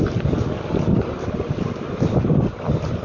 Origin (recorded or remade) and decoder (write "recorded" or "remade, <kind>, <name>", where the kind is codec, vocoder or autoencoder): recorded